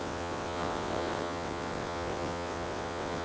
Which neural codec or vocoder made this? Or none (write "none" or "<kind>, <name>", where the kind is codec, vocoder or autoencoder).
vocoder, WaveNeXt